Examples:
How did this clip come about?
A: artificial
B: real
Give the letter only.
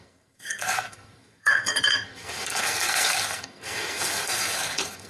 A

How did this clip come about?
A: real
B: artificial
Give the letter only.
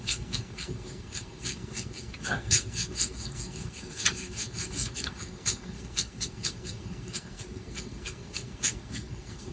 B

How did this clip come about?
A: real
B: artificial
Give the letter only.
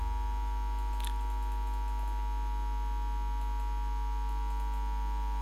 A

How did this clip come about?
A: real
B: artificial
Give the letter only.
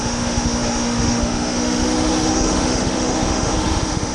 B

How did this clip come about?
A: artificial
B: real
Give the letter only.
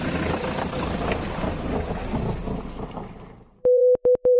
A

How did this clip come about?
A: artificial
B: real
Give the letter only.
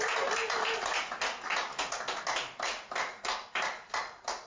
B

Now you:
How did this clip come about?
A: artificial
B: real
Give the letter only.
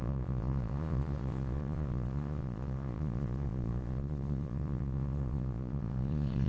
A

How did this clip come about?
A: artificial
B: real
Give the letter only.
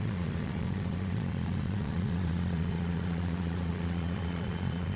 A